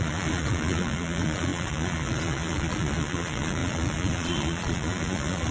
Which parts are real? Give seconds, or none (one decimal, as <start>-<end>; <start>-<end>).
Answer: none